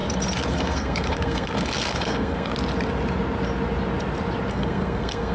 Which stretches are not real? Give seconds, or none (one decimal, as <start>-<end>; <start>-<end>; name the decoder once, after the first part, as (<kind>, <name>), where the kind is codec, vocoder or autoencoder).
0.5-2.5 (codec, SNAC); 4.5-5.3